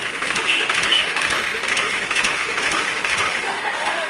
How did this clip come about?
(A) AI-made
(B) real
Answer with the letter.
A